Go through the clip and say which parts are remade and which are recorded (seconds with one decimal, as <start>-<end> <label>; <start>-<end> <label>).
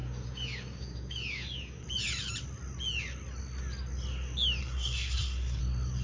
0.0-4.6 recorded; 4.6-5.6 remade; 5.6-6.0 recorded